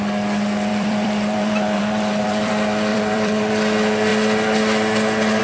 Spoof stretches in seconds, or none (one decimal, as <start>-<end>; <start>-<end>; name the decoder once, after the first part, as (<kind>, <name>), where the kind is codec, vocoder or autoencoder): 0.7-2.5 (vocoder, BigVGAN v2); 2.9-3.5